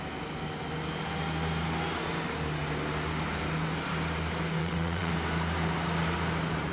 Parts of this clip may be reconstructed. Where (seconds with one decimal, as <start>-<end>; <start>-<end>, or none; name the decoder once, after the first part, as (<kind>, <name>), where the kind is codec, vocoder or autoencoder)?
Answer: 4.6-5.1 (vocoder, WaveNeXt)